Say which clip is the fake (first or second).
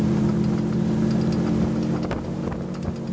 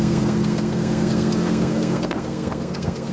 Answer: second